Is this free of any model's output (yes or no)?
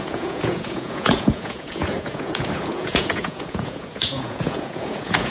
no